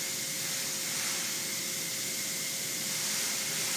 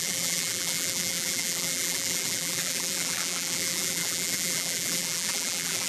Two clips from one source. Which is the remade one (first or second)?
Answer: second